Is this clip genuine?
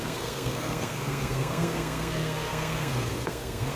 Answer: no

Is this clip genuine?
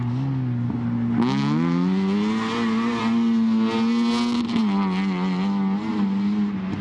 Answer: yes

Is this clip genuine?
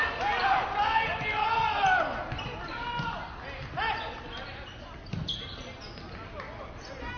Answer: yes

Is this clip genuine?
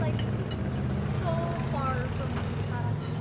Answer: yes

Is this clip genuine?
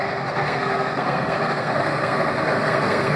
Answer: no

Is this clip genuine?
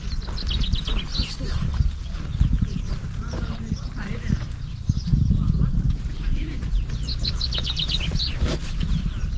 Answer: yes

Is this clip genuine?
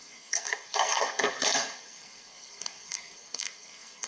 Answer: no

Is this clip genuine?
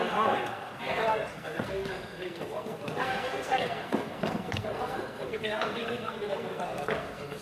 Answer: no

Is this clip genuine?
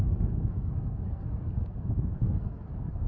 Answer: no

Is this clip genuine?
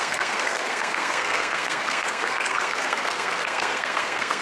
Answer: no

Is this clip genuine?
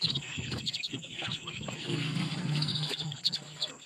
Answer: no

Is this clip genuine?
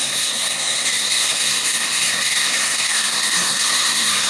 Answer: no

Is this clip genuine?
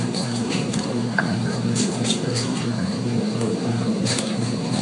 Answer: no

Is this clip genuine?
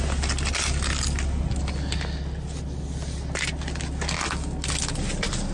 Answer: yes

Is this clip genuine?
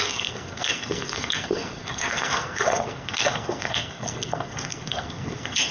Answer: no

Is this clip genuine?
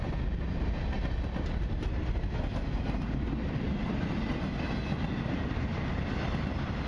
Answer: yes